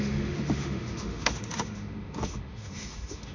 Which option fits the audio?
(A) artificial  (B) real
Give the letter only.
A